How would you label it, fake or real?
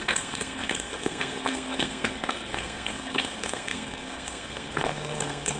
fake